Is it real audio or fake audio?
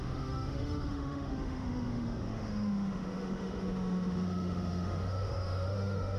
fake